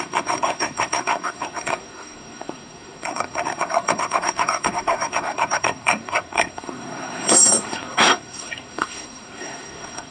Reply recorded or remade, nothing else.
remade